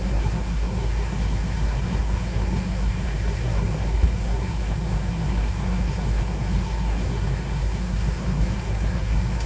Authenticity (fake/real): fake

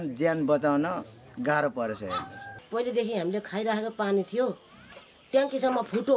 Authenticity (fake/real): real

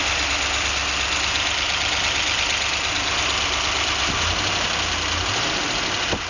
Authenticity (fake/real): real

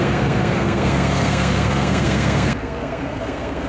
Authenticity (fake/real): fake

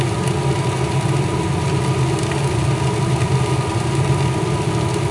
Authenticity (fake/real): real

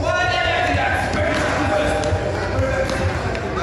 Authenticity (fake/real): real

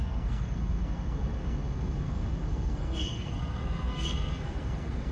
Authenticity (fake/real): fake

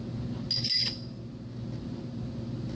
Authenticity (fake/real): real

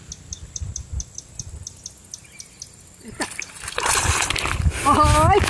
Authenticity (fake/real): real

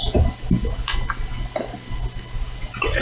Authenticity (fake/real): real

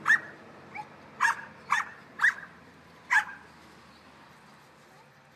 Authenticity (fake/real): real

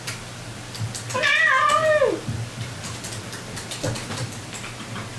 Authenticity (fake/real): real